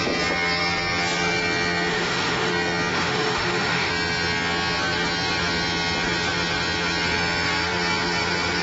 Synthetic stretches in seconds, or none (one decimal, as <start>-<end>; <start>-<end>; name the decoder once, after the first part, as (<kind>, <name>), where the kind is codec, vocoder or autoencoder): 1.9-2.5 (autoencoder, DAC-VAE); 2.9-3.9